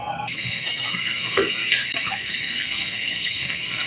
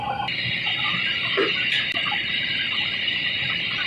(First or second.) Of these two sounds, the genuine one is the second